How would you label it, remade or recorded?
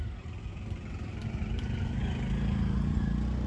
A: recorded